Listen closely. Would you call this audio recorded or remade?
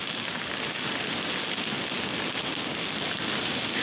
recorded